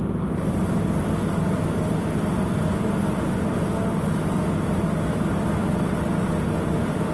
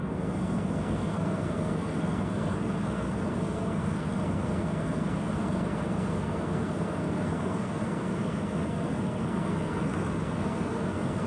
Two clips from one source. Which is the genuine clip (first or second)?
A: first